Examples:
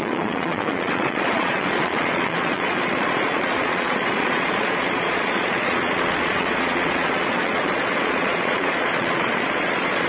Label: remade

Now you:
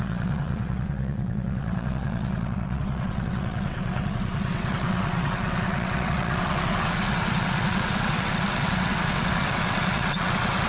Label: remade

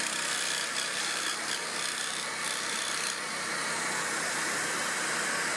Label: remade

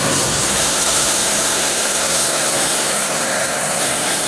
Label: remade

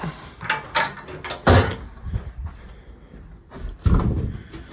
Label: recorded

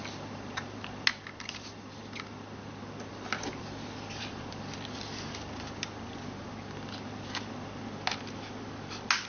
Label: recorded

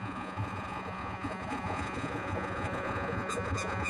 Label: remade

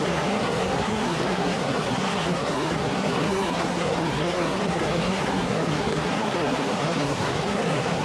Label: remade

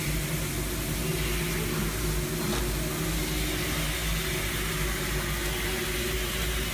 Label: recorded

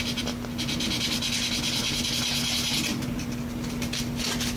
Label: recorded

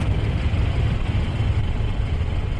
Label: remade